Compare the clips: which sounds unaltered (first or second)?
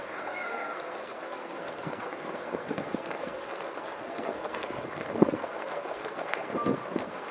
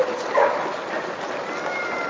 second